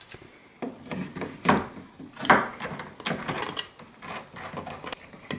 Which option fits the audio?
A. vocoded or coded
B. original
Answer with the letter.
B